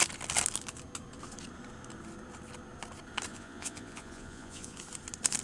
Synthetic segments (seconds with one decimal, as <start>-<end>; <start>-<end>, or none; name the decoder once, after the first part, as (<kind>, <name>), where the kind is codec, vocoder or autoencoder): 3.3-4.8 (vocoder, Vocos)

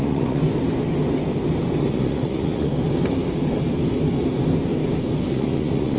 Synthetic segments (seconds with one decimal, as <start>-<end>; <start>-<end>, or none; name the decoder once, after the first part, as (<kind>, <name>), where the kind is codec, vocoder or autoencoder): 0.0-0.4 (vocoder, Vocos); 1.8-2.7; 5.3-6.0